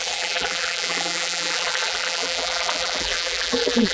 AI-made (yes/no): yes